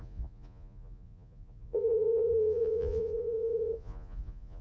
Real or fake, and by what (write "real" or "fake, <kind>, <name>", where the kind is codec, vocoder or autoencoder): fake, vocoder, Vocos